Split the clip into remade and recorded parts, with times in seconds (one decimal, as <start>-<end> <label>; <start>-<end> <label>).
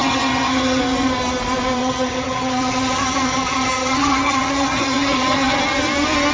0.0-0.8 remade; 0.8-1.8 recorded; 1.8-5.6 remade; 5.6-6.3 recorded